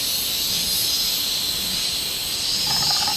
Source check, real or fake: real